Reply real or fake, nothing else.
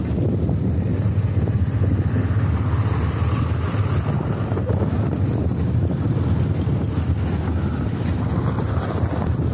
real